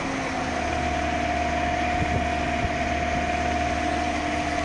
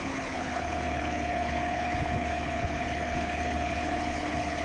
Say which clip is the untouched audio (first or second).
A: first